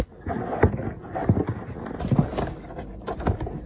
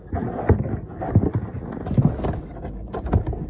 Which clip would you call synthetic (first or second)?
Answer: second